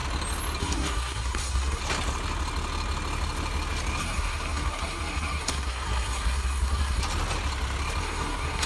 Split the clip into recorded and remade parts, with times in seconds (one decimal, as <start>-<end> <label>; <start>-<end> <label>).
0.0-0.6 recorded; 0.6-1.8 remade; 1.8-4.0 recorded; 4.0-7.0 remade; 7.0-8.0 recorded; 8.0-8.7 remade